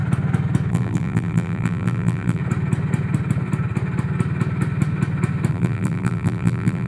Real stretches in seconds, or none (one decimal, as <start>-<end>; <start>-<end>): 0.0-0.7; 2.4-5.5